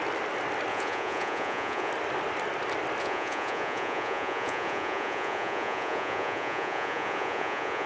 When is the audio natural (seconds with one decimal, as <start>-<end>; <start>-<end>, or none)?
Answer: 0.0-0.7; 1.9-3.0